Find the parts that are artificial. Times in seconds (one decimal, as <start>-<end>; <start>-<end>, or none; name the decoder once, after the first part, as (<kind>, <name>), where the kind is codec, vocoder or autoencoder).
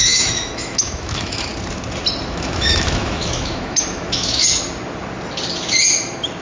0.0-1.5 (autoencoder, DAC-VAE); 2.3-4.4